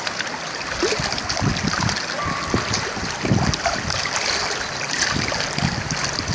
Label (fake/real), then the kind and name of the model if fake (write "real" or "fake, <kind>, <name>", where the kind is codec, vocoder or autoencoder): real